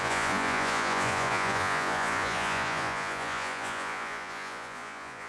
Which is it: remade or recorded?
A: remade